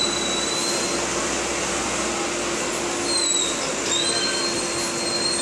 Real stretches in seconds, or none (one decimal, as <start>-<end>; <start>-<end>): 0.0-5.4